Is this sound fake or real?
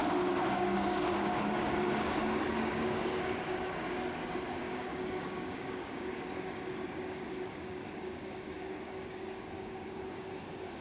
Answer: fake